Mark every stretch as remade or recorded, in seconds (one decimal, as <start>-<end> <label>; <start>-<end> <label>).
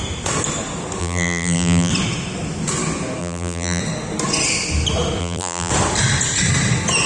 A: 0.0-1.0 recorded; 1.0-1.9 remade; 1.9-3.2 recorded; 3.2-3.8 remade; 3.8-5.2 recorded; 5.2-5.7 remade; 5.7-7.1 recorded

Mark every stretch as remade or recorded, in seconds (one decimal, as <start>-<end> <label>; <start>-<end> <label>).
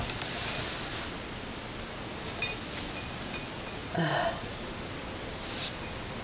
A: 0.0-3.8 recorded; 3.8-4.6 remade; 4.6-6.2 recorded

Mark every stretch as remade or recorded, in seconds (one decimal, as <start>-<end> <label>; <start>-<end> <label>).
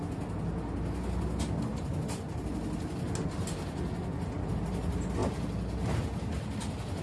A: 0.0-1.7 recorded; 1.7-2.9 remade; 2.9-7.0 recorded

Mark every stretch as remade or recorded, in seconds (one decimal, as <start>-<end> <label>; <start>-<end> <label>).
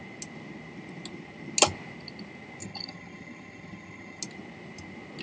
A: 0.0-2.6 recorded; 2.6-4.2 remade; 4.2-5.2 recorded